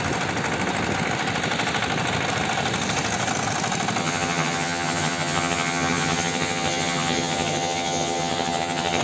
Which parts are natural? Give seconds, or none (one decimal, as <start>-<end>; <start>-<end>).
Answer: 0.0-4.0